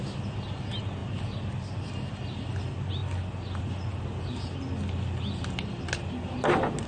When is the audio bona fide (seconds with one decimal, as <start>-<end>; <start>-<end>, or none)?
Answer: 0.0-6.9